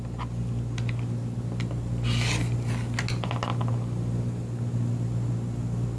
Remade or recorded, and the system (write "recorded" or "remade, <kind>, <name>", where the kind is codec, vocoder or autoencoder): recorded